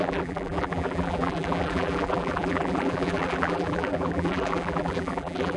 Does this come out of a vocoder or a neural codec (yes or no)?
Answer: yes